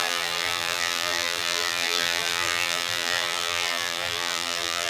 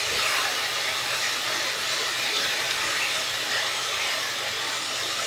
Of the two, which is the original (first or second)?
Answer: second